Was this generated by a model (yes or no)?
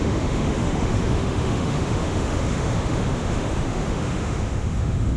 yes